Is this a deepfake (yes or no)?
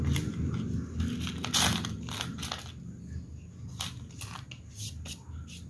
no